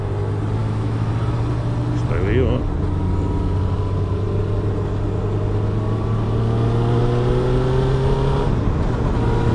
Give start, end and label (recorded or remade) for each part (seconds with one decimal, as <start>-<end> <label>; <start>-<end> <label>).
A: 0.0-0.6 recorded; 0.6-1.1 remade; 1.1-9.5 recorded